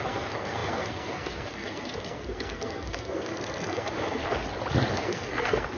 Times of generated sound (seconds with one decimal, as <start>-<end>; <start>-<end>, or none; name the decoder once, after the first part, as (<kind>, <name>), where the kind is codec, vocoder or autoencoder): 0.0-4.4 (codec, SNAC); 4.9-5.8